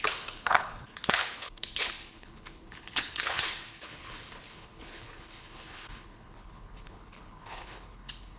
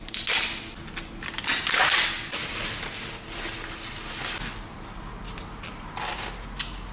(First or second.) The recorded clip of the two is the second